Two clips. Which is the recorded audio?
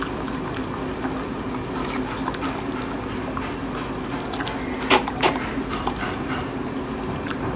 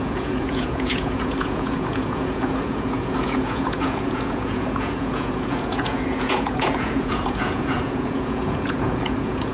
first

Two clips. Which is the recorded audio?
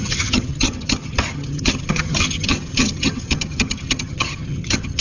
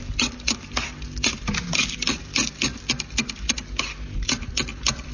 second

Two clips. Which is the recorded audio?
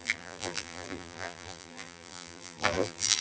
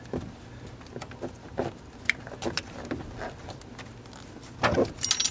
second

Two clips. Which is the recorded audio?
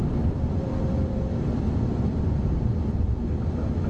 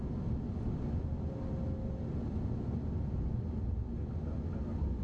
second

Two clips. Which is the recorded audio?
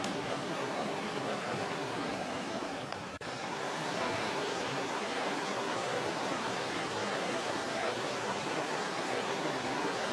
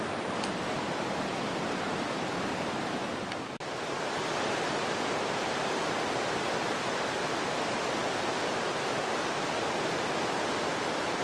second